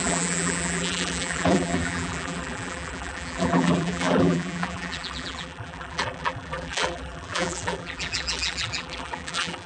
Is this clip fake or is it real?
fake